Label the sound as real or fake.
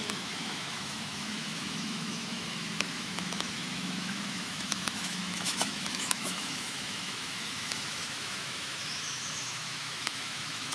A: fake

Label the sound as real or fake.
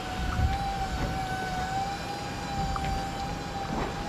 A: real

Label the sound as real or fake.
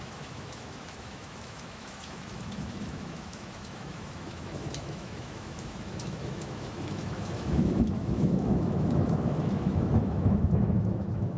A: fake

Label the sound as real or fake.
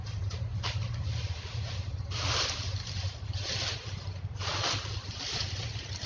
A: real